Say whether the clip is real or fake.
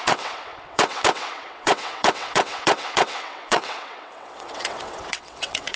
fake